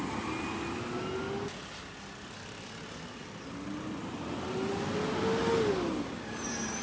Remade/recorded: recorded